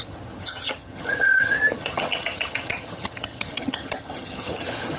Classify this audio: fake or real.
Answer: fake